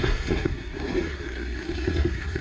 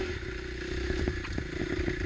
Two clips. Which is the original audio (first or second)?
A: second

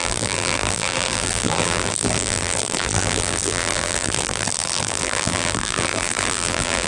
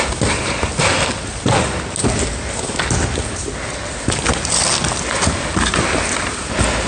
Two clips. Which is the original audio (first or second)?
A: second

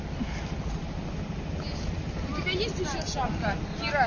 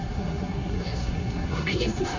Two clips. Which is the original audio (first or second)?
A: first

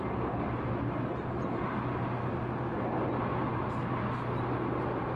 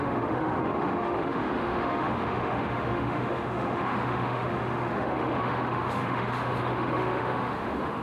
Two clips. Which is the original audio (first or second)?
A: first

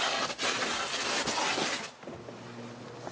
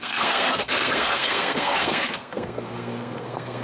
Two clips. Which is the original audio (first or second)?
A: first